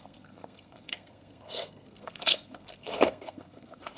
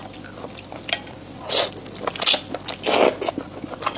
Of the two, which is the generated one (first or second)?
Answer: first